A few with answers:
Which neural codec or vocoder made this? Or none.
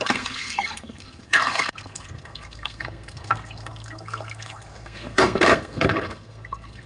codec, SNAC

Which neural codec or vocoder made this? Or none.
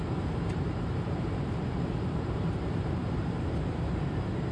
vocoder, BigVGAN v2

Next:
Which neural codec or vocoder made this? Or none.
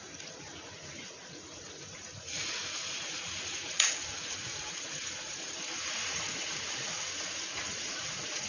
vocoder, Vocos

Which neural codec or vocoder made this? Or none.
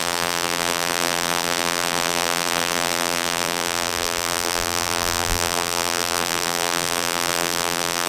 vocoder, BigVGAN v2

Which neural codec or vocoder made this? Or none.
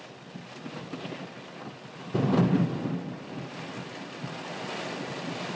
none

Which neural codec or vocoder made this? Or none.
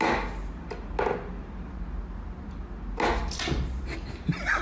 none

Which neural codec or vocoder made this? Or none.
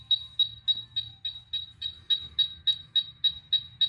none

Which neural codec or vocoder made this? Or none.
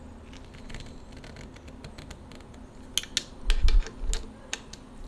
none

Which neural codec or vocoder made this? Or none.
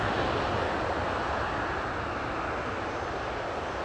none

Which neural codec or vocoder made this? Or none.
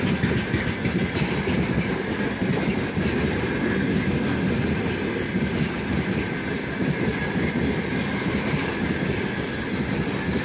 none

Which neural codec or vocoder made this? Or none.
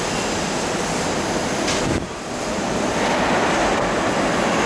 none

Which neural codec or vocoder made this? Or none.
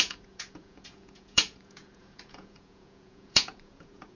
vocoder, Vocos